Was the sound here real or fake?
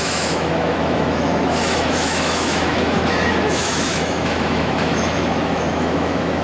fake